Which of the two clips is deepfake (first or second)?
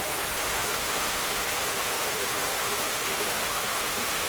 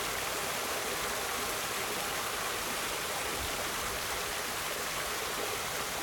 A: first